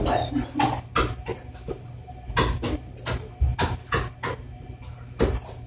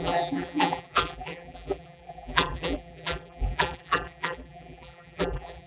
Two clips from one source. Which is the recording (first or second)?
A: first